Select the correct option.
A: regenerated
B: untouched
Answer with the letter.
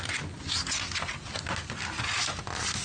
B